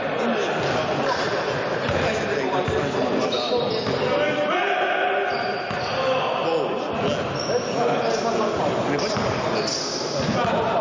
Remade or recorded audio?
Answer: recorded